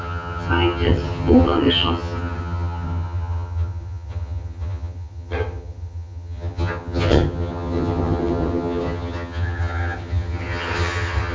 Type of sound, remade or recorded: remade